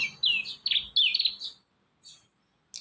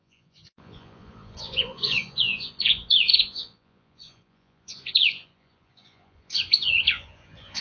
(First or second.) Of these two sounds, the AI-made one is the second